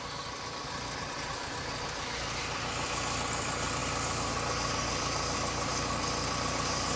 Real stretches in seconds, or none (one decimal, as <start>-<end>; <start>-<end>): 0.0-7.0